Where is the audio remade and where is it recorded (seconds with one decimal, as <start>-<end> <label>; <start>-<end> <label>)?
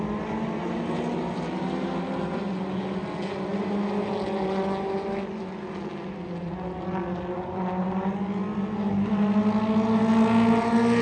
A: 0.0-11.0 recorded